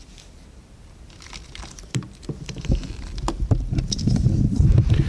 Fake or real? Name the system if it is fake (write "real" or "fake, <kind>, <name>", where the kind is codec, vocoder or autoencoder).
fake, vocoder, BigVGAN v2